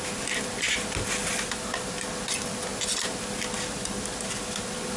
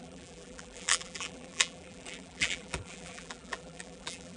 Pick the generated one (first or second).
second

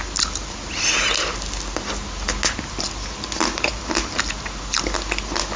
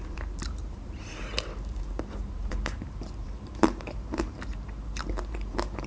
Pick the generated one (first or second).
second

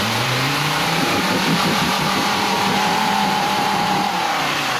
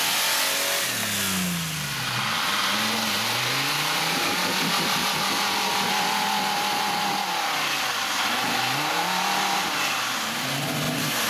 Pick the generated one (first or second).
first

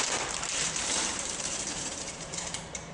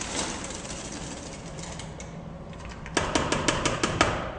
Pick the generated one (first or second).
first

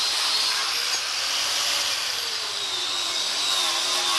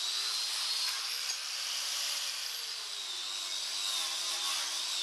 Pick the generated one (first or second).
first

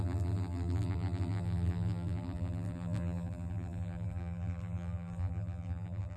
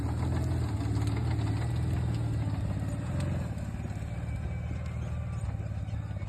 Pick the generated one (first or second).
first